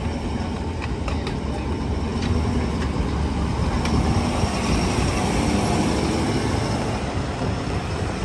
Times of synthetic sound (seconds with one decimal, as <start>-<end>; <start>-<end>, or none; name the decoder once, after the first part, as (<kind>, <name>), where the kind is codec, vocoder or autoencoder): 2.1-2.6 (vocoder, BigVGAN v2)